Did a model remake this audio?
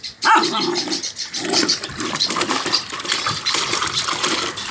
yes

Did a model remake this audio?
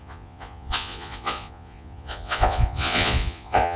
yes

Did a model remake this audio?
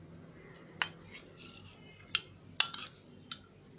no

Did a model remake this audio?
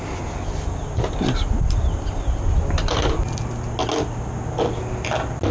no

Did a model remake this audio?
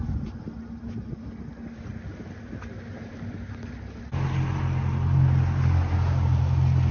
no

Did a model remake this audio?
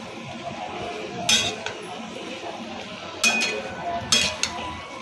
no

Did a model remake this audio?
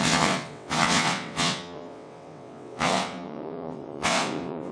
yes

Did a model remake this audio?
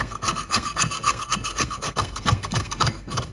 yes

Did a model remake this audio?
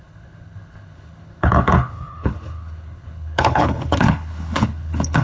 yes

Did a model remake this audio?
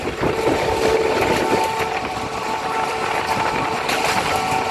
yes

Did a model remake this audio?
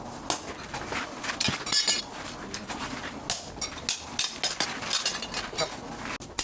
no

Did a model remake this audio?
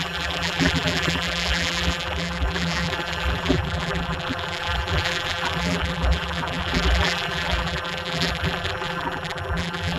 yes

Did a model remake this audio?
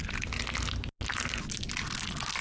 no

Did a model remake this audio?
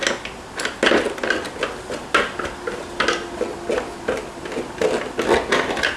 no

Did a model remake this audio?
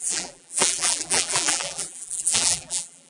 yes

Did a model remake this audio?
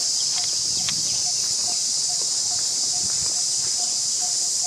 no